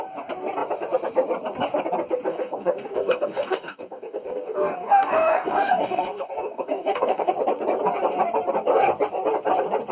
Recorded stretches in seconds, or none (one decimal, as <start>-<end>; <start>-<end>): 0.0-2.3; 7.3-9.9